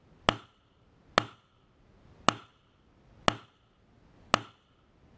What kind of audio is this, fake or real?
real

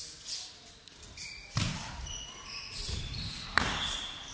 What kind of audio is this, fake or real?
fake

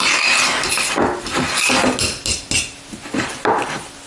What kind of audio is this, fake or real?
real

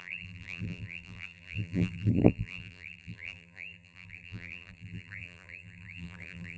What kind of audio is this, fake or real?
fake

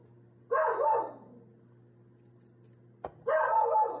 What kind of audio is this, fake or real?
real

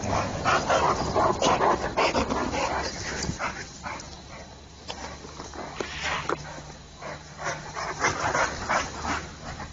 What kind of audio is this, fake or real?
real